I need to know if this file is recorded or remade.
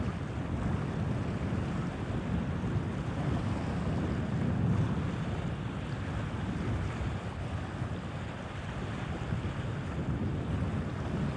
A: recorded